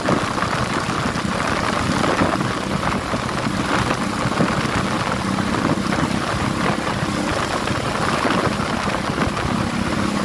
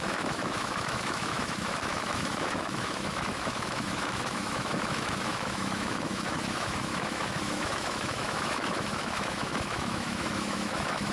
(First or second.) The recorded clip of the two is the first